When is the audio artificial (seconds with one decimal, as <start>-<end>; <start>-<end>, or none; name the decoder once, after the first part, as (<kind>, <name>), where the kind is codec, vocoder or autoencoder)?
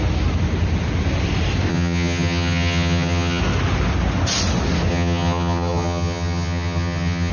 1.7-3.4 (vocoder, HiFi-GAN); 4.9-7.3